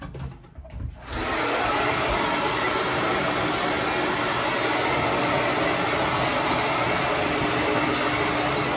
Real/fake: real